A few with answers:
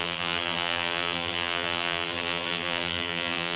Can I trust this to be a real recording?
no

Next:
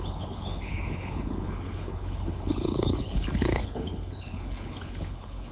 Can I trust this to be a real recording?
no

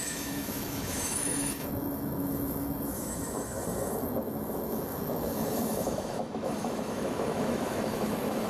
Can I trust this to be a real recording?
no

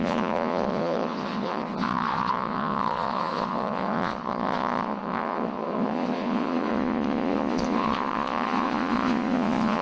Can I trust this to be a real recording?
no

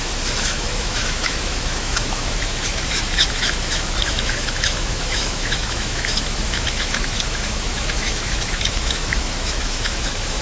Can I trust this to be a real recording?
no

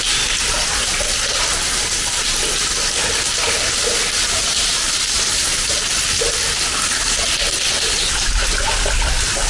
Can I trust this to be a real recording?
yes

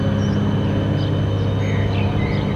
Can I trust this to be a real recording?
yes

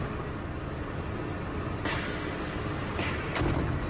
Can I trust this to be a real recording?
yes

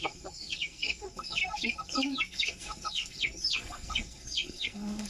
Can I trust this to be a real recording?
no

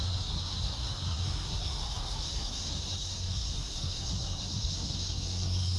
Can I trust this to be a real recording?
no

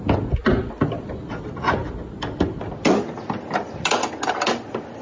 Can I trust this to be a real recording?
yes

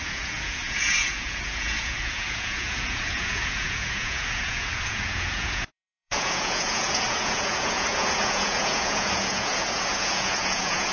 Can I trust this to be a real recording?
no